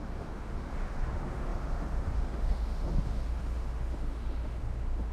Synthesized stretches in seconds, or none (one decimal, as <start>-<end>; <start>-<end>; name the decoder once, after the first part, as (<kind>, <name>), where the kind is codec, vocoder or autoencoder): 0.0-5.1 (autoencoder, DAC-VAE)